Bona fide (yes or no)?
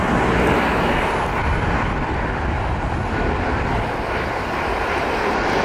yes